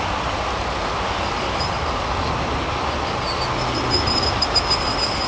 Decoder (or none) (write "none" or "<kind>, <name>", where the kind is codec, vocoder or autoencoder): none